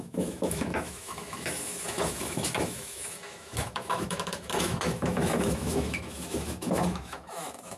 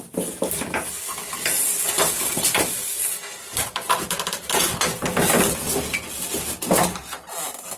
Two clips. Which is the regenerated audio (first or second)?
first